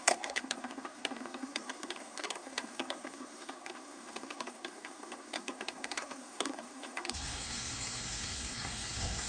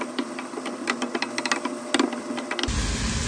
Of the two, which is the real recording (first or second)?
second